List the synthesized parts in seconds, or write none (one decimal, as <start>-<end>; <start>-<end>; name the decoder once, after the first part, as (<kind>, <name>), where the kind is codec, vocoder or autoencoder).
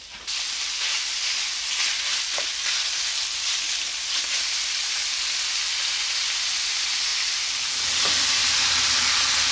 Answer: 1.9-2.5 (vocoder, BigVGAN v2); 7.1-7.8